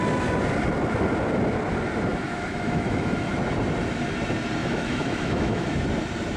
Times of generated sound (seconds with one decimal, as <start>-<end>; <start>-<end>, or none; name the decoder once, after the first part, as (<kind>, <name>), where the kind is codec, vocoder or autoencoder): 2.1-3.3 (autoencoder, DAC-VAE); 4.6-5.8